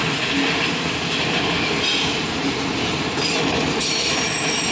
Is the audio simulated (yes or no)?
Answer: yes